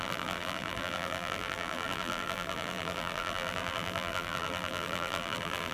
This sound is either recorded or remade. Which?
remade